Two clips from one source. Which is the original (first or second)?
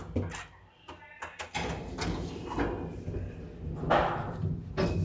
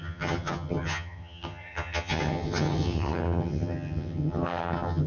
first